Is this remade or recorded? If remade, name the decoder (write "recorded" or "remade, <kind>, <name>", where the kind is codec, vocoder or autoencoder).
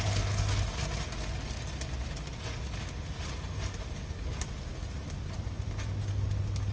recorded